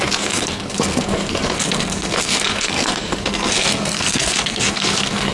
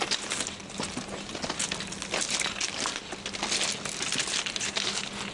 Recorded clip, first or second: second